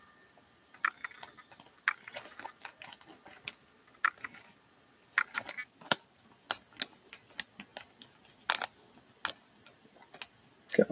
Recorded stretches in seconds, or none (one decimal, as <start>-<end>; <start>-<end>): 0.0-10.9